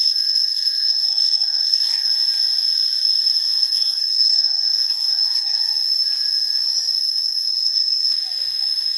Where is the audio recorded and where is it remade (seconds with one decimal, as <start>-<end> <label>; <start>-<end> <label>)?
0.0-2.1 remade; 2.1-3.6 recorded; 3.6-5.6 remade; 5.6-7.0 recorded; 7.0-8.1 remade; 8.1-9.0 recorded